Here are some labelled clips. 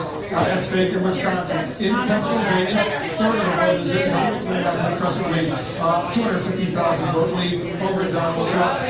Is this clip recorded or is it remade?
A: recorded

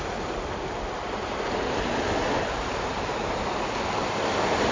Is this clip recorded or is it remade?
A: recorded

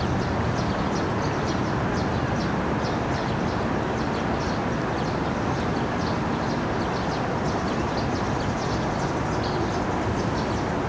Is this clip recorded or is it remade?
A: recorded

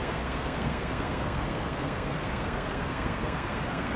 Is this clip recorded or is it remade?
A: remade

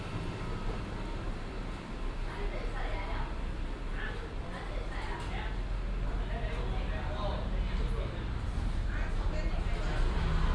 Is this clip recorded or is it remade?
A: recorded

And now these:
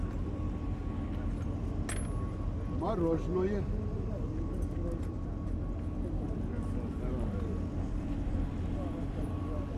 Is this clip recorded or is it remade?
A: recorded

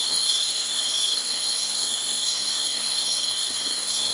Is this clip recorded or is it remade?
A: remade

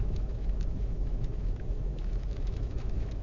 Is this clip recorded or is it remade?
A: remade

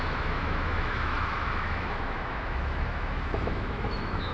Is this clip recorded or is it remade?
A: remade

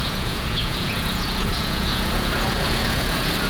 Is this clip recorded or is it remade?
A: remade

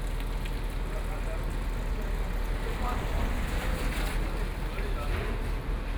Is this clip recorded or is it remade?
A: recorded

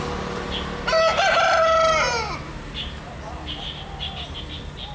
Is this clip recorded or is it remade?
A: recorded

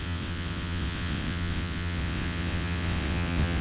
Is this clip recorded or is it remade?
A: remade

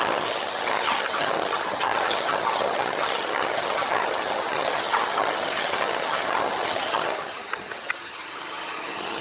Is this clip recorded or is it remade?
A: remade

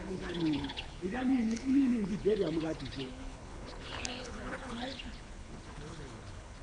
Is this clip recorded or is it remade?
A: remade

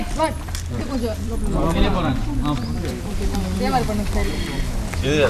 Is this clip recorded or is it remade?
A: recorded